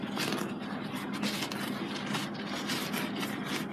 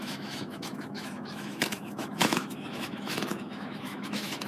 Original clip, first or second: first